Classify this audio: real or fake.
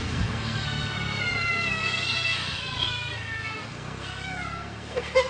fake